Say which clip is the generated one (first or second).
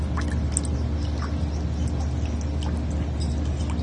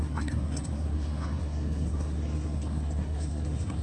second